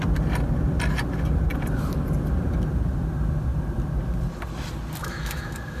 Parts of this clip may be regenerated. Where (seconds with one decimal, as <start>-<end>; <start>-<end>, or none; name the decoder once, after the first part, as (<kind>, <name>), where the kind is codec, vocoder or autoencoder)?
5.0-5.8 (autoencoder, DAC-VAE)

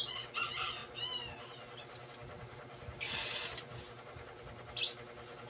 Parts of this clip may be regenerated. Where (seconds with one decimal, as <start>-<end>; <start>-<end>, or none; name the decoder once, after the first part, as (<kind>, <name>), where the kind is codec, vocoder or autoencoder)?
none

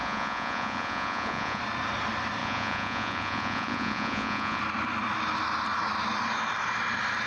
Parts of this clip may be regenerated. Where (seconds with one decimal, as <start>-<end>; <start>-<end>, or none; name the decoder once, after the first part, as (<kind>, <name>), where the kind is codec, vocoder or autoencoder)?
0.0-1.6 (vocoder, Vocos); 2.4-4.6

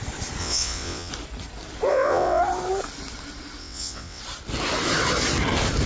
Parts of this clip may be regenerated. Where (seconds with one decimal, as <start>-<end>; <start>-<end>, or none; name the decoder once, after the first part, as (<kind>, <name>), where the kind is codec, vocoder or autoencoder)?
0.4-1.1 (vocoder, WaveNeXt); 1.9-2.4; 3.6-4.2

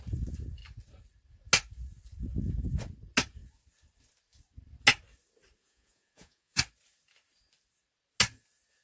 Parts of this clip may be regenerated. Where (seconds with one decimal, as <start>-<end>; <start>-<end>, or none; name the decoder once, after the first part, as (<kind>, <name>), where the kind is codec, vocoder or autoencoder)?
5.6-6.6 (vocoder, Vocos)

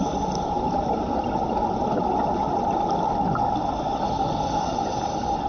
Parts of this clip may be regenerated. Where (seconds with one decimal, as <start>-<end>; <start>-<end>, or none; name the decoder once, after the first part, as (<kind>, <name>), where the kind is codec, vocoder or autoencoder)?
none

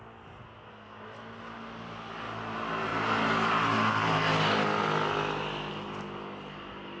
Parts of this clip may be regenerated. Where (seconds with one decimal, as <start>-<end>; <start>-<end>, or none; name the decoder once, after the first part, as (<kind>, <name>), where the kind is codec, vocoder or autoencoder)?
none

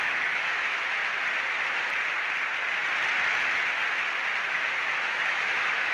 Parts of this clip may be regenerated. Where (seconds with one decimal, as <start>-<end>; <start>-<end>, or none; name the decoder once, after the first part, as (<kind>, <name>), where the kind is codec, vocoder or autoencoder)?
0.0-1.0 (autoencoder, DAC-VAE); 4.5-5.9